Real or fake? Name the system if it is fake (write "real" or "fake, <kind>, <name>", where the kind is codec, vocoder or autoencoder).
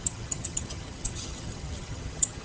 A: fake, vocoder, HiFi-GAN